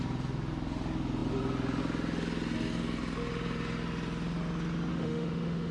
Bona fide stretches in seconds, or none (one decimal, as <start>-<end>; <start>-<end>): 0.0-4.9